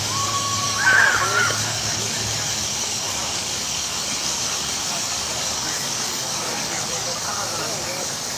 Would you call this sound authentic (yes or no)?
no